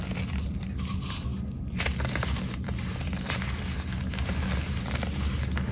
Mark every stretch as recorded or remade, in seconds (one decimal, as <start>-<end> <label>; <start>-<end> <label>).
0.0-5.7 recorded